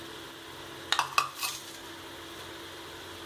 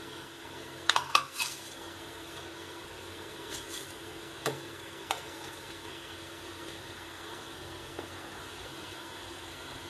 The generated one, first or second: second